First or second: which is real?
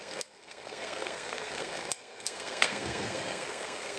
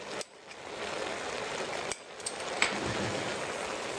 second